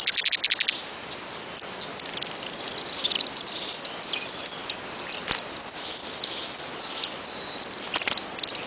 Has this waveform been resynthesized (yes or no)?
no